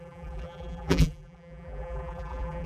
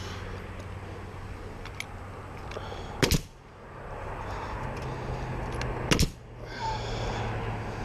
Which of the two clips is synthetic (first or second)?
first